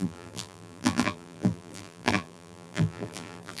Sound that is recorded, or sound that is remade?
remade